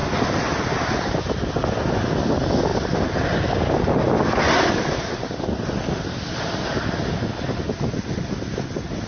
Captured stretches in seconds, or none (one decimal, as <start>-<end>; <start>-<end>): 0.0-9.1